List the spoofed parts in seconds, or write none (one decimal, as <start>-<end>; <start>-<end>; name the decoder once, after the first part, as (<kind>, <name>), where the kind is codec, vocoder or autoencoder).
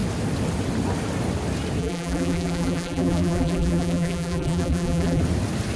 1.8-5.2 (vocoder, BigVGAN v2)